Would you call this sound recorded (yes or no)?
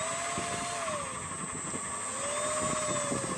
yes